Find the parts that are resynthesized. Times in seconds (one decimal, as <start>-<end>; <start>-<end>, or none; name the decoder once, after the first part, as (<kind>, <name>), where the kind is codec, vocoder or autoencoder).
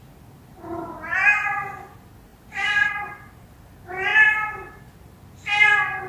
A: 2.3-3.6 (vocoder, BigVGAN v2)